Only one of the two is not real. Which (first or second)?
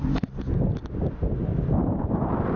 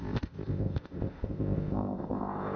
second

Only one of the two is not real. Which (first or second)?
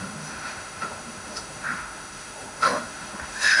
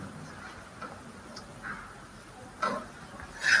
first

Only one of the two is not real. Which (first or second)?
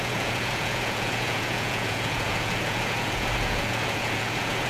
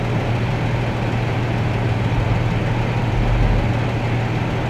first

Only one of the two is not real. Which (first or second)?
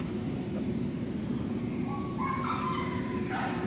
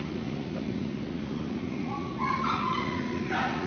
second